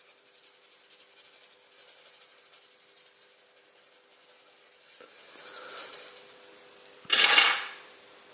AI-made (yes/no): no